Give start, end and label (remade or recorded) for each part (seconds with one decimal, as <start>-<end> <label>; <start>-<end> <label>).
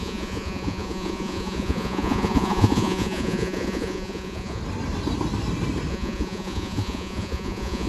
0.0-4.6 remade; 4.6-5.9 recorded; 5.9-7.9 remade